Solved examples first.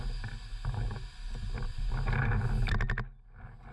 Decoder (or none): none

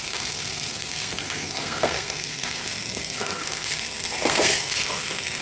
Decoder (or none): codec, SNAC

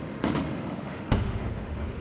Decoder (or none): autoencoder, DAC-VAE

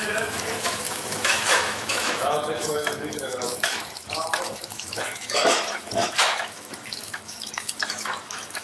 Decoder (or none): autoencoder, DAC-VAE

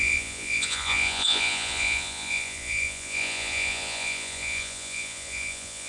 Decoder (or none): vocoder, Vocos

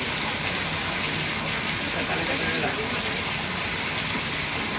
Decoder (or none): none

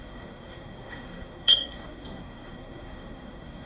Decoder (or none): codec, SNAC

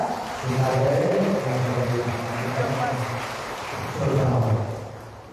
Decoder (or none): vocoder, BigVGAN v2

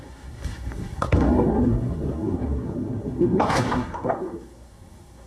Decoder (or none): codec, SNAC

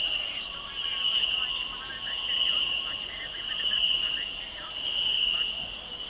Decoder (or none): none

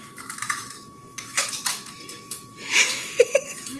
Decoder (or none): autoencoder, DAC-VAE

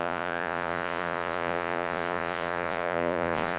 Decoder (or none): vocoder, Vocos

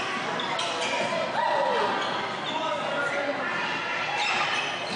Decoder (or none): none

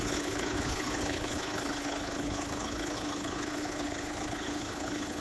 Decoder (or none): codec, HILCodec